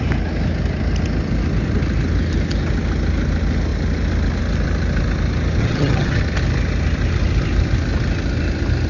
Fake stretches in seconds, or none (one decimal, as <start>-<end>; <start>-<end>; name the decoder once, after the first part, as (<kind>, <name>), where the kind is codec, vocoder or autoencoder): 5.6-6.2 (vocoder, HiFi-GAN)